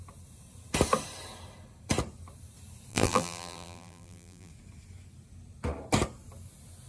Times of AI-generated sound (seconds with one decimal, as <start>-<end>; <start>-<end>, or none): 2.9-4.5